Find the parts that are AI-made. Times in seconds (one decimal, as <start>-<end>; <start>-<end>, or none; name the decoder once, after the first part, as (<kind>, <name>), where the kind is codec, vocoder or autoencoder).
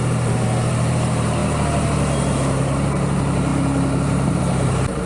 0.0-1.4 (vocoder, BigVGAN v2); 2.3-5.1